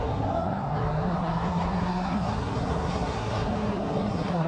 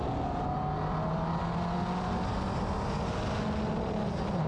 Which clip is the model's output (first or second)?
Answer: first